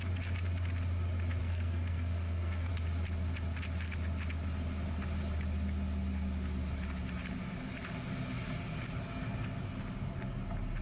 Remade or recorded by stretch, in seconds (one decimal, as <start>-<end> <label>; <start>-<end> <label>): 0.0-1.4 recorded; 1.4-2.7 remade; 2.7-10.8 recorded